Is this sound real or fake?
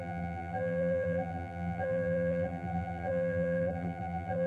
fake